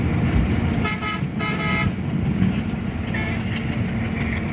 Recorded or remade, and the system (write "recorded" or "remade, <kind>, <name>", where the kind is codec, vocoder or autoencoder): recorded